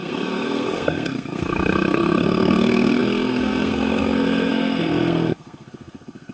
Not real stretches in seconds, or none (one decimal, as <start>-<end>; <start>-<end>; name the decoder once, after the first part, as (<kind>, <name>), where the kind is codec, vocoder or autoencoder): 0.0-6.3 (codec, SNAC)